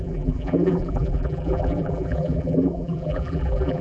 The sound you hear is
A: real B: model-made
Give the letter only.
B